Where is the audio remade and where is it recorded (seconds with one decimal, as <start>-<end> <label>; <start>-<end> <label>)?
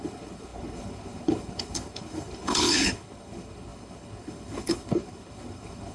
0.0-5.9 remade